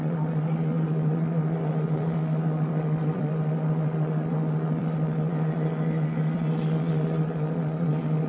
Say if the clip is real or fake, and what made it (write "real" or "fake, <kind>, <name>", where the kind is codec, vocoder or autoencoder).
fake, vocoder, Vocos